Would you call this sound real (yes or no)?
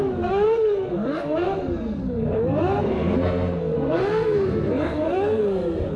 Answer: no